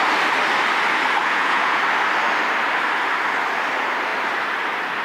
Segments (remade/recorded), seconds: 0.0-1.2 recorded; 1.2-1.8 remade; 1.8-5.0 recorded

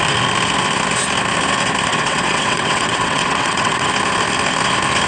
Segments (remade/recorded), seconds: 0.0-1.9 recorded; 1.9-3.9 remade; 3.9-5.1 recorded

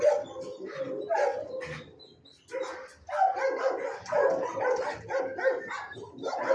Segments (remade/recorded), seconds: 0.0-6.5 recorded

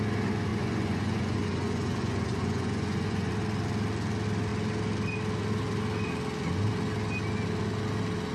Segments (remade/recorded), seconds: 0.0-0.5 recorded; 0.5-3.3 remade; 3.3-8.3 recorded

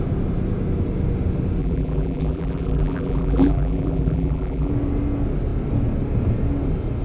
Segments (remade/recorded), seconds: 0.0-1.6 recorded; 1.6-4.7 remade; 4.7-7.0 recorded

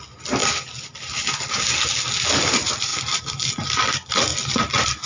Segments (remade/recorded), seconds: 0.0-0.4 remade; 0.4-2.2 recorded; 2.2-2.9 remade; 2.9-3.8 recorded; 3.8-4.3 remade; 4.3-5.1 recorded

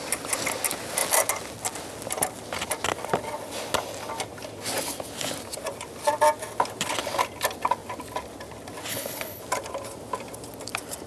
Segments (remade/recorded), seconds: 0.0-8.9 recorded; 8.9-9.4 remade; 9.4-11.1 recorded

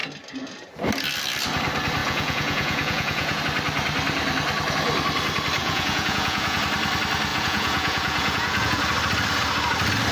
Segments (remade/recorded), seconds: 0.0-2.0 recorded; 2.0-3.4 remade; 3.4-5.6 recorded; 5.6-6.6 remade; 6.6-7.3 recorded; 7.3-8.8 remade; 8.8-10.1 recorded